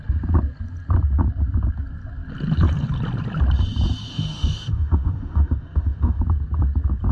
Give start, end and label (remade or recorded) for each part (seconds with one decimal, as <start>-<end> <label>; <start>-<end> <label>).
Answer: 0.0-4.1 recorded; 4.1-6.2 remade; 6.2-7.1 recorded